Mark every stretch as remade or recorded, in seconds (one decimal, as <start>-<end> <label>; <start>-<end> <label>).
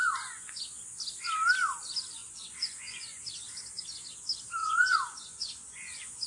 0.0-0.6 remade; 0.6-2.2 recorded; 2.2-3.2 remade; 3.2-4.6 recorded; 4.6-6.3 remade